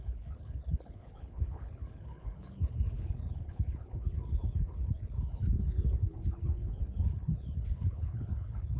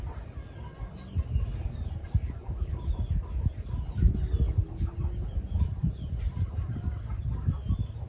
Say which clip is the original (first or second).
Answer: second